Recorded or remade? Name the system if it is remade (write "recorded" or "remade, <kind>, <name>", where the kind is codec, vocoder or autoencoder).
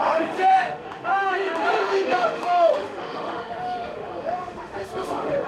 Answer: remade, autoencoder, DAC-VAE